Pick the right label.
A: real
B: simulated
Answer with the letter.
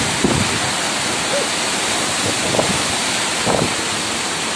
A